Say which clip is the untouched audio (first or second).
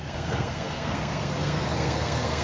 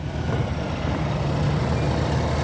second